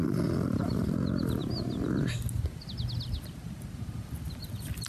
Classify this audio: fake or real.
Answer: real